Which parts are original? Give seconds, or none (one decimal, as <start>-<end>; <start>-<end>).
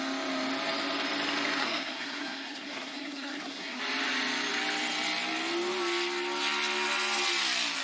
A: 0.0-1.6; 3.8-7.8